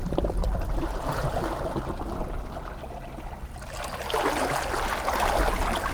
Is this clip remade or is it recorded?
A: recorded